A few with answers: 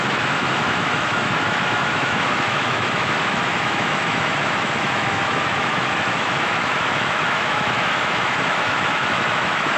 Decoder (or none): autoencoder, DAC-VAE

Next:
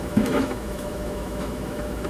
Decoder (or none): autoencoder, DAC-VAE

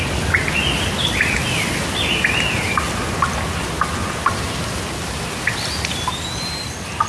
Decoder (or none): none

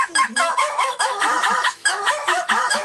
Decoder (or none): autoencoder, DAC-VAE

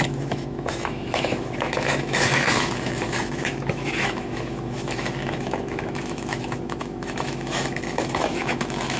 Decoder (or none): autoencoder, DAC-VAE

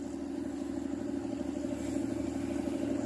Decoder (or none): none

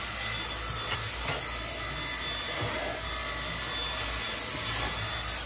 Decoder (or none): none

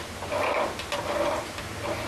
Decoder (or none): none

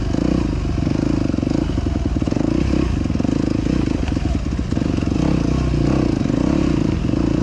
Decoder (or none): none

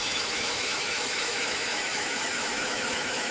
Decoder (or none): autoencoder, DAC-VAE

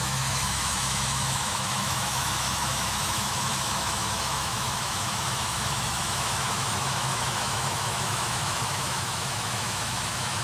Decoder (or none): autoencoder, DAC-VAE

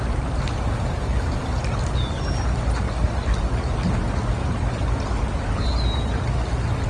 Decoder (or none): none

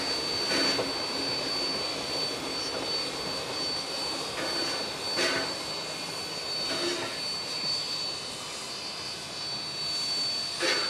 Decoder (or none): none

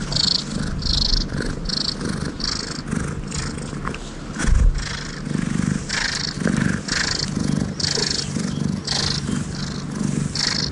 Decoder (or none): none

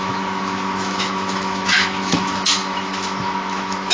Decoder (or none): autoencoder, DAC-VAE